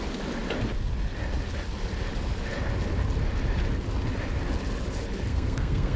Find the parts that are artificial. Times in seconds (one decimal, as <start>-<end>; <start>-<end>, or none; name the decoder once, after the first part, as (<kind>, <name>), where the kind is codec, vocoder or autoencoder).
5.3-6.0 (codec, SNAC)